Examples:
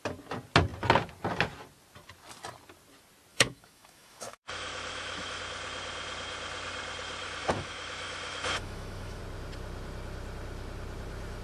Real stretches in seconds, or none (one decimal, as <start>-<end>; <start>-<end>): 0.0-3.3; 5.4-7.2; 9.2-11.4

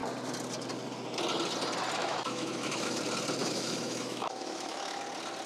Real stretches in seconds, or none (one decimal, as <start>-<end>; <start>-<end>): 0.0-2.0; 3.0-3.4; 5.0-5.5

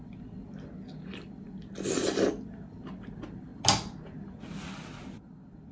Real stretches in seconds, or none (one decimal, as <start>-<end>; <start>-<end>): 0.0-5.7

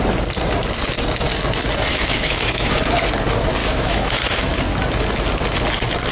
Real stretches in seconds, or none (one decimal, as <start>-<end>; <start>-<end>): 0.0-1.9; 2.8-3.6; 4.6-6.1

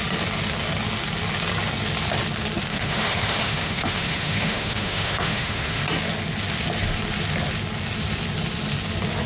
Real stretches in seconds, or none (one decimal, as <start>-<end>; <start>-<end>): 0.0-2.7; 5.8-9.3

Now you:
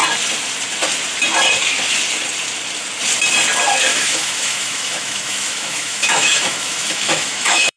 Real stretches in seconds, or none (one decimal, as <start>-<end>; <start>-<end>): 0.0-3.9